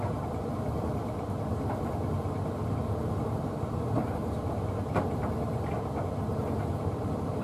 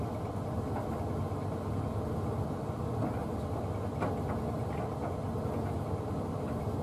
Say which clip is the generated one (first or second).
first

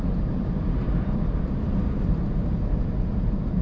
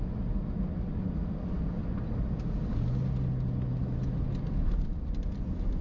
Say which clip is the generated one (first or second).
first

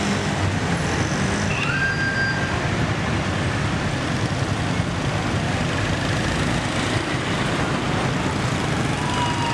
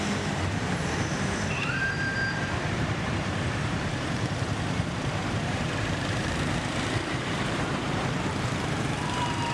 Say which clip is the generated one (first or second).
second